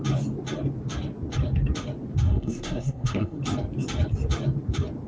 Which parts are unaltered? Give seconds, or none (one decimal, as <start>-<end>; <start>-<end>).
0.0-2.3; 3.4-5.1